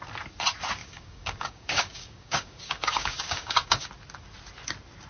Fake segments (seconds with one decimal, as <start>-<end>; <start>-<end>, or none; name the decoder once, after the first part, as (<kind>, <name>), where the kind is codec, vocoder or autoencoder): 0.8-3.9 (codec, DAC)